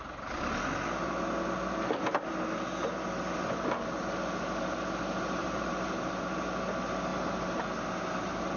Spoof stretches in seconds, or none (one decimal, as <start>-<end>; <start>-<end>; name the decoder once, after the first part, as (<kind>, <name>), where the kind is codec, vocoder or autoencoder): 2.8-4.0 (vocoder, BigVGAN v2); 5.4-6.2; 7.1-7.6

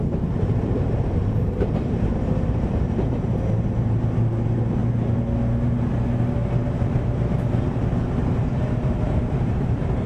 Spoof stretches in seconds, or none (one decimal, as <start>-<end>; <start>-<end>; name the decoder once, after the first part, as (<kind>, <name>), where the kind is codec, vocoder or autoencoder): 0.0-4.8 (vocoder, BigVGAN v2); 6.7-10.1

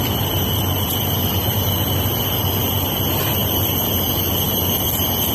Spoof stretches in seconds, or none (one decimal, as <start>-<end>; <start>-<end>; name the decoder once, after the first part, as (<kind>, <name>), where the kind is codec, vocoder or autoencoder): none